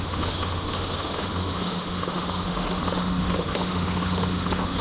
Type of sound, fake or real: fake